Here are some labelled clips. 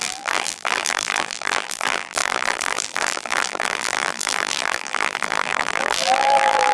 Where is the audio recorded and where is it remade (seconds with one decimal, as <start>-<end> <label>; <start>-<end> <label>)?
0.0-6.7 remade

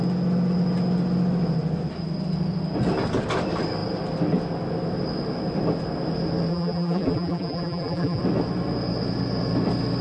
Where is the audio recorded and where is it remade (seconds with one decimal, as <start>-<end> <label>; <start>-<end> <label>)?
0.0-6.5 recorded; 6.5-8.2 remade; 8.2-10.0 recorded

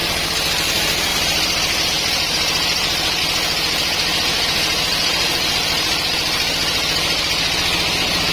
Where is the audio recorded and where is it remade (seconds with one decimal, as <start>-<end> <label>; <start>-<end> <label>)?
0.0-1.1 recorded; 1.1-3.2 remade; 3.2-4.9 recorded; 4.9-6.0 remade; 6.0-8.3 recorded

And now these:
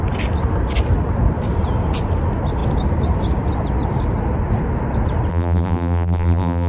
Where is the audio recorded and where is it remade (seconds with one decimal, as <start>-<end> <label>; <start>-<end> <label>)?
0.0-5.3 recorded; 5.3-6.7 remade

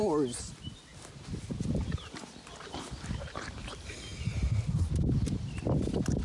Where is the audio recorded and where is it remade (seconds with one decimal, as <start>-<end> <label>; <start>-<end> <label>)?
0.0-0.9 recorded; 0.9-3.3 remade; 3.3-6.2 recorded

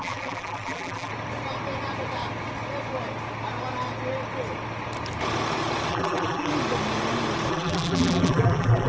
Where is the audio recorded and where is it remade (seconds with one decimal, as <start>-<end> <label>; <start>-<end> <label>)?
0.0-1.1 remade; 1.1-5.9 recorded; 5.9-6.5 remade; 6.5-7.5 recorded; 7.5-8.9 remade